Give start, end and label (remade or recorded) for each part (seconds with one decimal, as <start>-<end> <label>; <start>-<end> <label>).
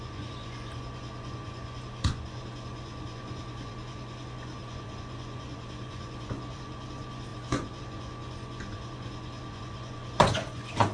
0.0-10.9 remade